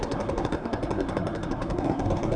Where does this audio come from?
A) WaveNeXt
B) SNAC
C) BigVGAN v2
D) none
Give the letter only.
B